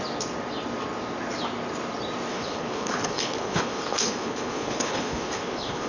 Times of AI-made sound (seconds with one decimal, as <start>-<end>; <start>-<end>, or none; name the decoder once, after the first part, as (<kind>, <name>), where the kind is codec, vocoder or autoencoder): 2.3-5.9 (codec, HILCodec)